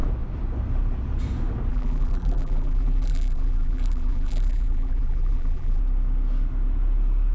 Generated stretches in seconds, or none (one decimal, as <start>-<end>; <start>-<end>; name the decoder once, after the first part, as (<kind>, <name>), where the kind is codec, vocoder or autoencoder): 1.7-5.8 (vocoder, BigVGAN v2)